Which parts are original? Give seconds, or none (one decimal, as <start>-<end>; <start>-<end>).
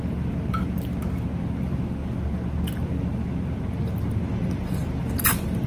0.0-5.0